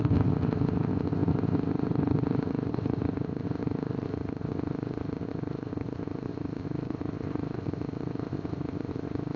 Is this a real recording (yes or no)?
no